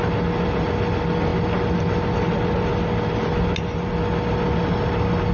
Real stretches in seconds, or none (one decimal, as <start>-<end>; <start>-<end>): 0.0-5.3